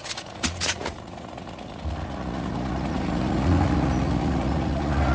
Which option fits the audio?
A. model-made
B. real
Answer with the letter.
A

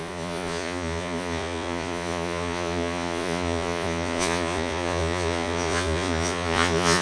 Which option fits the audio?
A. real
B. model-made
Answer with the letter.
B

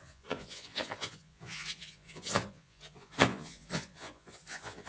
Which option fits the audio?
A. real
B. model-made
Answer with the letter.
B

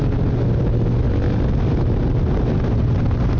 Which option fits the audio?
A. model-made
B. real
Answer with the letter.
B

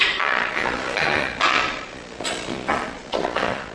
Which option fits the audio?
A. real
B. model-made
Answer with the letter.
B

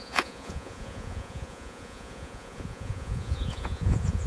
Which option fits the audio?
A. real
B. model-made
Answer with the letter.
B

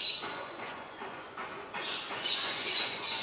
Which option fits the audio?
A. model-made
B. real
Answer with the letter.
A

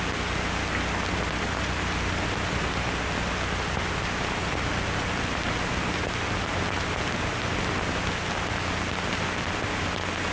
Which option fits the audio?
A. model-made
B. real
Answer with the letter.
B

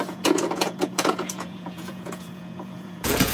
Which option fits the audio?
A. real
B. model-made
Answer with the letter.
B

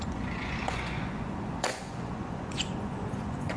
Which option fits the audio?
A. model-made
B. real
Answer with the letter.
A